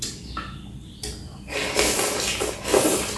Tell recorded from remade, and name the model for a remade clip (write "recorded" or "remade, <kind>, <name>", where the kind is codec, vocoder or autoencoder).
recorded